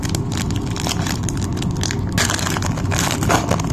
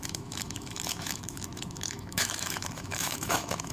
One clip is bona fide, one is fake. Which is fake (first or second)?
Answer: second